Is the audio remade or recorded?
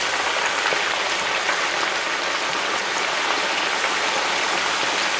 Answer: recorded